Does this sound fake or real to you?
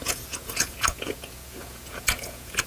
fake